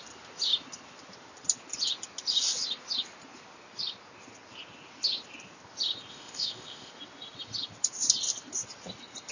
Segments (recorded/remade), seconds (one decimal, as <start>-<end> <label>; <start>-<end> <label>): 0.0-6.1 recorded; 6.1-6.9 remade; 6.9-9.3 recorded